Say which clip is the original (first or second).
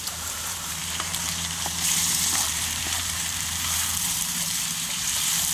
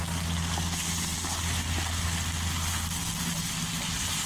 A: second